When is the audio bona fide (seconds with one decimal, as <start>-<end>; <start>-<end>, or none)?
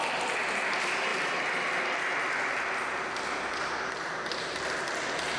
0.0-5.4